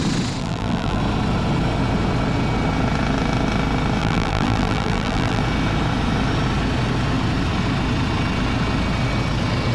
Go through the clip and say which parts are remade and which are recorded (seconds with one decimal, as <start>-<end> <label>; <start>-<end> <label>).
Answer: 0.0-0.4 recorded; 0.4-1.0 remade; 1.0-4.0 recorded; 4.0-5.4 remade; 5.4-9.7 recorded

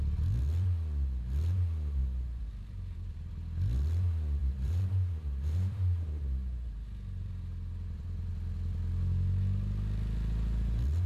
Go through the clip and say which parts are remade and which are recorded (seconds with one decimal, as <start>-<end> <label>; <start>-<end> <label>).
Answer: 0.0-2.0 recorded; 2.0-3.3 remade; 3.3-4.4 recorded; 4.4-8.3 remade; 8.3-11.1 recorded